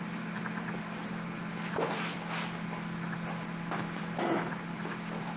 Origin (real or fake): real